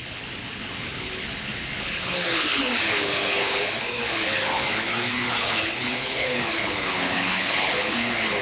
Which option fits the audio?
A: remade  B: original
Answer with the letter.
A